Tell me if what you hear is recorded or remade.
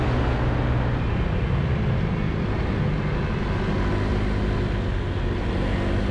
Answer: recorded